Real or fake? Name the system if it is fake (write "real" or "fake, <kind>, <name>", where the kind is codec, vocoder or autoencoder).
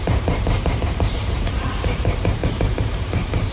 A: fake, vocoder, BigVGAN v2